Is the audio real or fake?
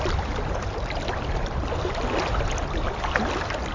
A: real